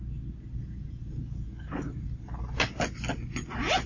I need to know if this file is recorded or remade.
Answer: recorded